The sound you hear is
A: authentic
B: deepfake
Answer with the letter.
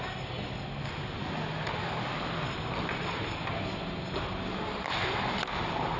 A